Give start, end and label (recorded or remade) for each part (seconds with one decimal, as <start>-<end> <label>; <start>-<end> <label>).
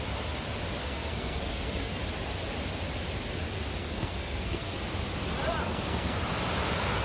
0.0-0.8 recorded; 0.8-2.0 remade; 2.0-3.8 recorded; 3.8-4.7 remade; 4.7-5.6 recorded; 5.6-6.2 remade; 6.2-7.0 recorded